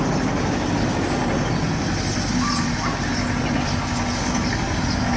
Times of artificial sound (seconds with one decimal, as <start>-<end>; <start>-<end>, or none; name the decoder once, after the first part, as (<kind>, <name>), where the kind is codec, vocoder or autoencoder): none